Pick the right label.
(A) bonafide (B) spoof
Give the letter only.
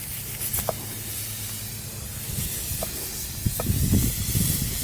A